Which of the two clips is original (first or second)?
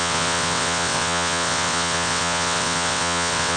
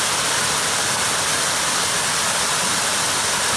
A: second